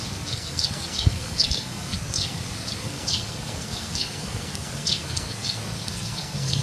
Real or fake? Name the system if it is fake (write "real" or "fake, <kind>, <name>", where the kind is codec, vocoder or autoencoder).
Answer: fake, codec, SNAC